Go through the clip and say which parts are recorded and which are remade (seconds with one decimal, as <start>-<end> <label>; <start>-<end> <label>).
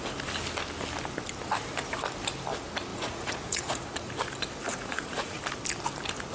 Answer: 0.0-2.9 recorded; 2.9-4.1 remade; 4.1-4.7 recorded; 4.7-5.4 remade; 5.4-6.3 recorded